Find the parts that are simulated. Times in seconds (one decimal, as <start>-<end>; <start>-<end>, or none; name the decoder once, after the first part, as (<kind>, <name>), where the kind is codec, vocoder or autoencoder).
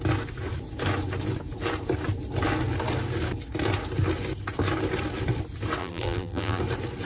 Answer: 5.8-6.6 (vocoder, BigVGAN v2)